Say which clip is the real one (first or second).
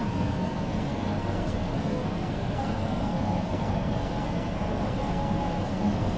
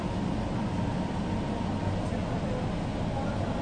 second